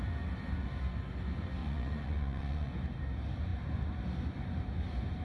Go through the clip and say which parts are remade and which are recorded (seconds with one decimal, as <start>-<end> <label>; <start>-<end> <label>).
0.0-1.6 recorded; 1.6-2.7 remade; 2.7-5.2 recorded